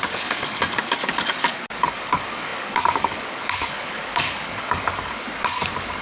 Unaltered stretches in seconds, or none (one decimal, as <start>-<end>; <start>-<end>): none